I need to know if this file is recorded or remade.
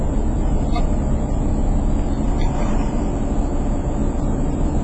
recorded